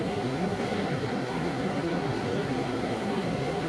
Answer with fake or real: fake